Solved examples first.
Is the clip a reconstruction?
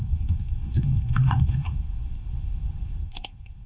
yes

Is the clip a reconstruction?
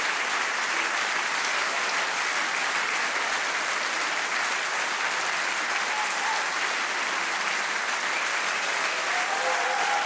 no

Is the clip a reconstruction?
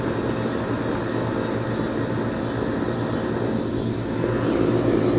no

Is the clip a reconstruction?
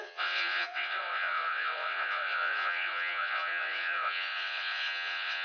yes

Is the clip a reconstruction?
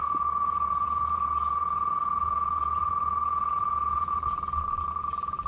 yes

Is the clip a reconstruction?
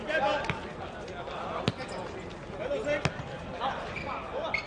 no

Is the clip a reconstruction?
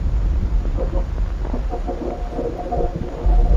no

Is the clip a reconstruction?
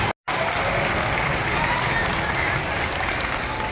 no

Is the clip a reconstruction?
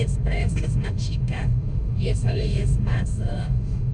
yes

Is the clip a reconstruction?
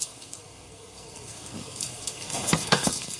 yes